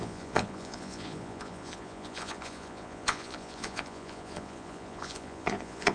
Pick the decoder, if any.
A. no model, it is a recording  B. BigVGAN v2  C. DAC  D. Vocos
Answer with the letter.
D